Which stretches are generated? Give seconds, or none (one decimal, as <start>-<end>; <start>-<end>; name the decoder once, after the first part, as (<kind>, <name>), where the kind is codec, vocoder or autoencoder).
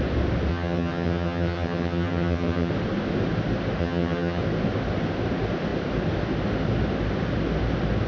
0.5-2.7 (vocoder, HiFi-GAN); 3.8-4.4